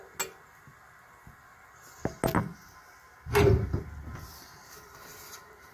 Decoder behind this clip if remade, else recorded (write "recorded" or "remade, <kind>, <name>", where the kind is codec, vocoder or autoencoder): recorded